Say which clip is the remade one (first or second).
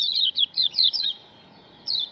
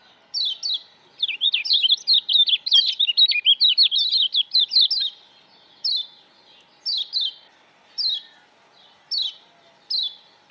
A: first